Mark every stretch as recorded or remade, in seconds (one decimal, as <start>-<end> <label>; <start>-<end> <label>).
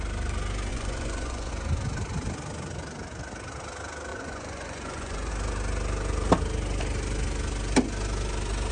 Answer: 0.0-0.7 recorded; 0.7-1.5 remade; 1.5-4.1 recorded; 4.1-5.3 remade; 5.3-8.7 recorded